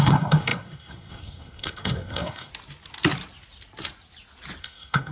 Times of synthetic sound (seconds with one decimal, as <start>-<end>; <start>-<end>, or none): 0.0-2.5; 4.6-5.1